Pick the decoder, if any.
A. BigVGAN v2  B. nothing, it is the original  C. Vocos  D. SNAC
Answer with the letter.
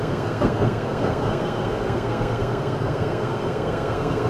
D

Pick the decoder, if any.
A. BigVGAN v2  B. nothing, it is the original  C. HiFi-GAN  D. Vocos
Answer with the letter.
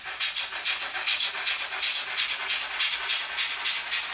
B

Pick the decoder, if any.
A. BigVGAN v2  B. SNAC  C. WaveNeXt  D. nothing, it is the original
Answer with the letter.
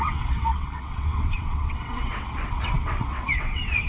C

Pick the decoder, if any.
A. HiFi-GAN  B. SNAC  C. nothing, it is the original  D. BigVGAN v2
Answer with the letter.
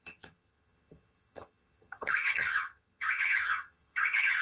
A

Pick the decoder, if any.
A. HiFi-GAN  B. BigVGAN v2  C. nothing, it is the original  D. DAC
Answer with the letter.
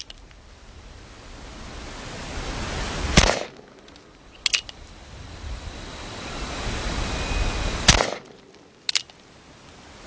C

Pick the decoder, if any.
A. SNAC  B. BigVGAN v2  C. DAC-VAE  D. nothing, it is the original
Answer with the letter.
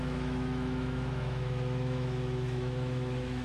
C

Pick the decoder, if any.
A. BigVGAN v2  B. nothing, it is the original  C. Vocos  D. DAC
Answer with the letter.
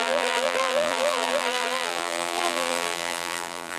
A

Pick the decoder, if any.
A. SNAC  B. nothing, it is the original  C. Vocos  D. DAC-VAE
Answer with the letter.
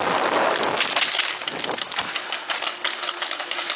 B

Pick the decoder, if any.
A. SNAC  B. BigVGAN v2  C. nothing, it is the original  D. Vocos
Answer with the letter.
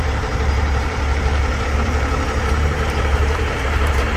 B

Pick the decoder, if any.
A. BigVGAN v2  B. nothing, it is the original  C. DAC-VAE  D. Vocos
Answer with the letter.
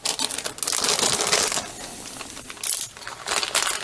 B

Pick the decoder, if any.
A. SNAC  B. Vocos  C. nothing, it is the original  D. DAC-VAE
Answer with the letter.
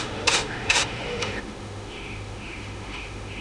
D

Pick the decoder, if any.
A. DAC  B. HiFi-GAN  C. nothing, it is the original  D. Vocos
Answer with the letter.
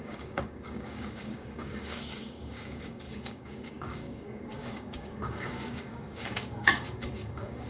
A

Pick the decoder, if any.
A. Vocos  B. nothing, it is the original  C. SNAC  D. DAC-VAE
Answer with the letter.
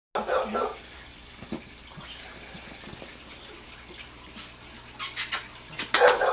B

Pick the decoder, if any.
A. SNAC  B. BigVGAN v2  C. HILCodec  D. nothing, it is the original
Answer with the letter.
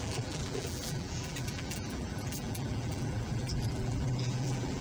B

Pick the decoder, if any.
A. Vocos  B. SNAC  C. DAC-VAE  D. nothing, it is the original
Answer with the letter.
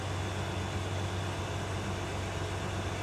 D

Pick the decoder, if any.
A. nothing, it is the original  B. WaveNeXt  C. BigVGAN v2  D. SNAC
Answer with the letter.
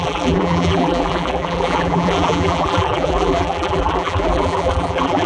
C